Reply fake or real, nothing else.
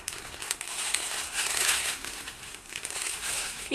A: fake